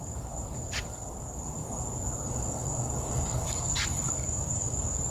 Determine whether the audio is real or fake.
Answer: fake